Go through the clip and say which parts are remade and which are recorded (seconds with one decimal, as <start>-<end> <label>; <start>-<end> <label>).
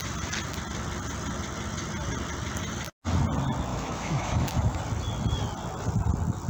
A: 0.0-3.7 recorded; 3.7-4.8 remade; 4.8-6.5 recorded